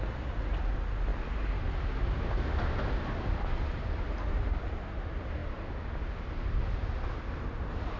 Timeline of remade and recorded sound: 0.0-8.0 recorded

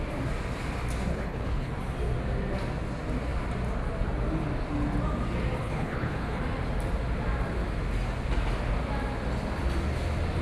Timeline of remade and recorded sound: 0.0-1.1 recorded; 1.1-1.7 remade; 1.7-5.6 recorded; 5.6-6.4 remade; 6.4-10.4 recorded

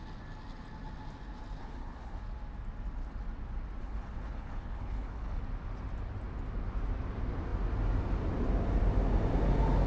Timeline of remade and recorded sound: 0.0-1.6 recorded; 1.6-2.2 remade; 2.2-3.8 recorded; 3.8-5.4 remade; 5.4-9.9 recorded